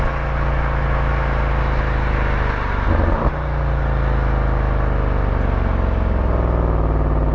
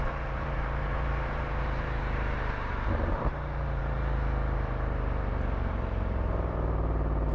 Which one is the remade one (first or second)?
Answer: second